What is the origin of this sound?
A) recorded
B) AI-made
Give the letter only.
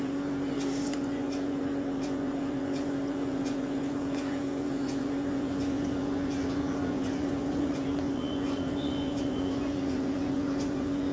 B